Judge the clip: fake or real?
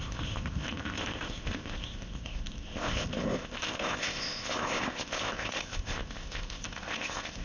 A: fake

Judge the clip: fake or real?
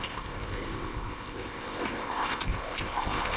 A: fake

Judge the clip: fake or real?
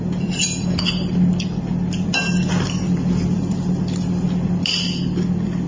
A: real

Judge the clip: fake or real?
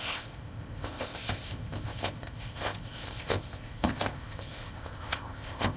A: fake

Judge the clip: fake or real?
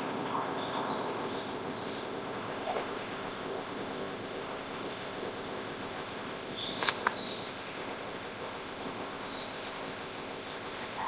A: fake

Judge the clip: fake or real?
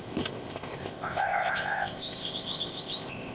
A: fake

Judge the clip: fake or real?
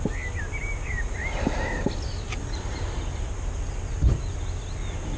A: real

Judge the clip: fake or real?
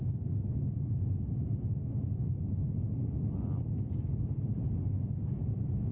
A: real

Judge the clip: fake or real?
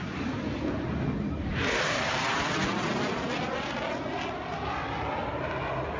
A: real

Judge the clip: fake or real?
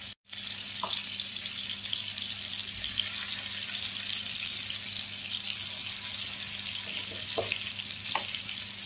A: real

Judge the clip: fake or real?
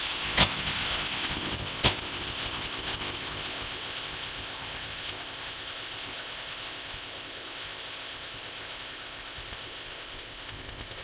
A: fake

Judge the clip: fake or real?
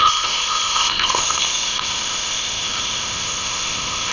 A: fake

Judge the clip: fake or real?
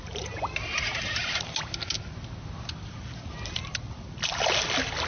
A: real